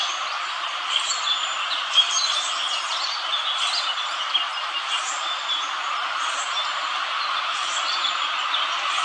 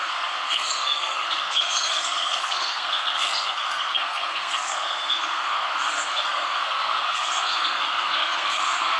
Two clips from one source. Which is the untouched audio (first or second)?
first